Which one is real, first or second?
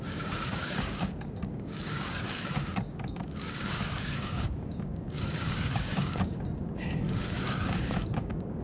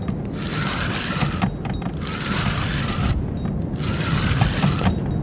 second